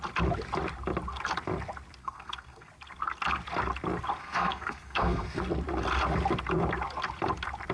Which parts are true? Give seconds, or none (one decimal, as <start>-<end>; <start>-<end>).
0.0-2.0; 2.7-4.2; 5.4-7.7